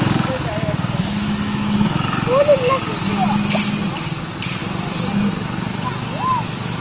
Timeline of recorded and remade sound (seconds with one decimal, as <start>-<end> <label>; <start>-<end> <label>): 0.0-1.1 recorded; 1.1-2.9 remade; 2.9-6.8 recorded